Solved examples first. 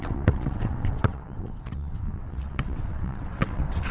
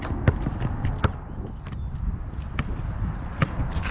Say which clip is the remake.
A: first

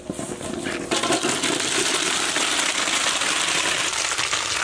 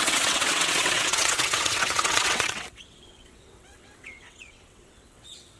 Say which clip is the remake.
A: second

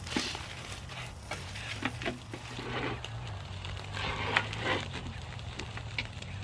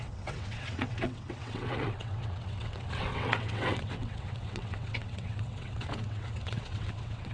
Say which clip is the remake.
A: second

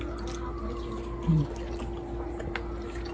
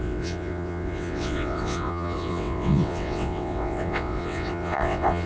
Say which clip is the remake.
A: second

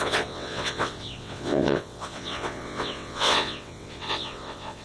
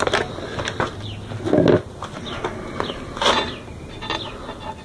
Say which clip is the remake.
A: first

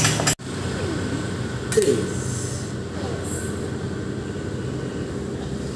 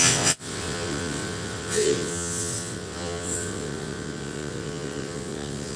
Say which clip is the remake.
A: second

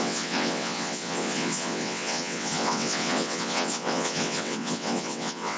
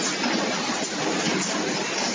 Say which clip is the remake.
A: first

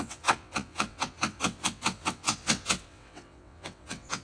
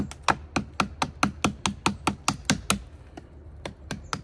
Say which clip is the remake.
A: first